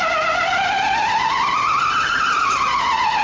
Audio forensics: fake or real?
real